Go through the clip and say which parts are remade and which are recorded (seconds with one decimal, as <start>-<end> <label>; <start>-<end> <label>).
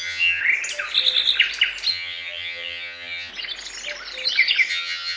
0.0-0.4 remade; 0.4-1.9 recorded; 1.9-3.3 remade; 3.3-4.7 recorded; 4.7-5.2 remade